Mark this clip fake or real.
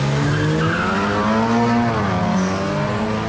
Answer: real